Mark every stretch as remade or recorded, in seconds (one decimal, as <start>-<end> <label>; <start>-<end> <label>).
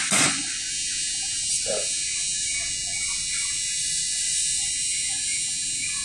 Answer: 0.0-0.7 remade; 0.7-3.8 recorded; 3.8-4.7 remade; 4.7-6.0 recorded